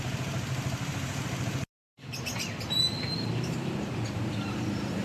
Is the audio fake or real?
fake